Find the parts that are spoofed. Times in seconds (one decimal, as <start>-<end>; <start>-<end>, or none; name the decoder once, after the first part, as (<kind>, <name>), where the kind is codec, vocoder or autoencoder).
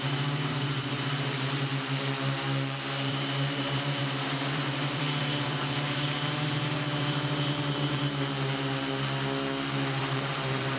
0.0-1.7 (vocoder, BigVGAN v2); 3.1-8.0; 10.0-10.8